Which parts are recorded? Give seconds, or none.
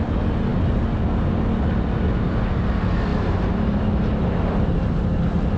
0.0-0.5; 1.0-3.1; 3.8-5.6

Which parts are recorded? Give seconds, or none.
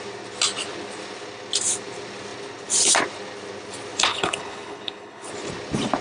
0.0-4.1; 5.3-6.0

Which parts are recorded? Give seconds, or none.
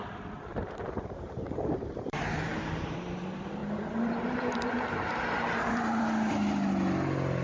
0.0-0.5; 3.2-3.6; 6.3-7.4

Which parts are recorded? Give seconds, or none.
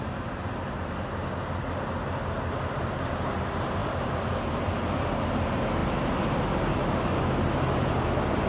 0.0-8.5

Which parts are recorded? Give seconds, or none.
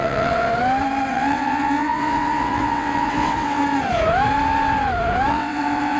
0.5-1.1; 3.6-5.3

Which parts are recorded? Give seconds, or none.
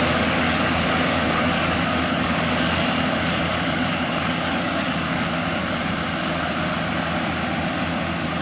5.6-8.4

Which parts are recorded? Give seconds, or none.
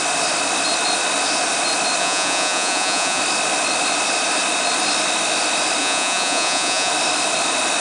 0.0-2.0; 3.2-5.8; 6.9-7.8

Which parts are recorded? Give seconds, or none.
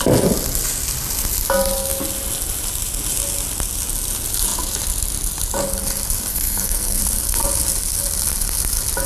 0.0-6.3; 7.0-9.1